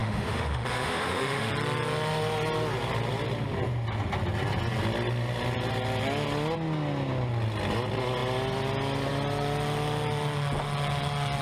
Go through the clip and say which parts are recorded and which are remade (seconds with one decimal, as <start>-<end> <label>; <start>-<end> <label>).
0.0-1.5 remade; 1.5-11.4 recorded